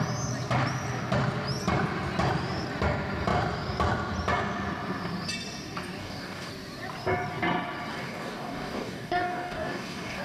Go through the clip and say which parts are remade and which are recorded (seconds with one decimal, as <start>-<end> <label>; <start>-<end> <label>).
0.0-6.0 recorded; 6.0-6.5 remade; 6.5-7.9 recorded; 7.9-10.2 remade